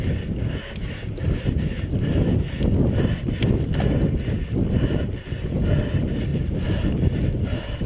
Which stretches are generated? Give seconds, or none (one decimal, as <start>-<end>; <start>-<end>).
6.3-6.8